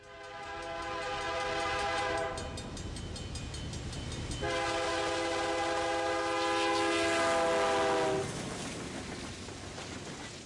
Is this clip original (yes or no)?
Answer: yes